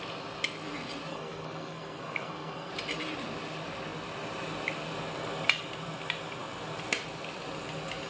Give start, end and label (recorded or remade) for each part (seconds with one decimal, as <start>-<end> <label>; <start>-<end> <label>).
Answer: 0.0-1.1 recorded; 1.1-2.7 remade; 2.7-8.1 recorded